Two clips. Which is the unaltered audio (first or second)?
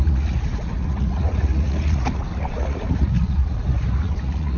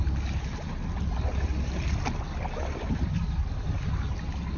second